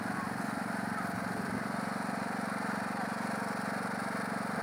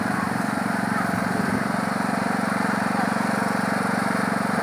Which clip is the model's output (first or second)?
second